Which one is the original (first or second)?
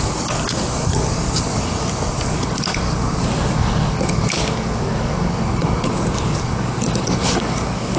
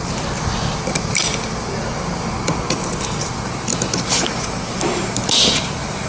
second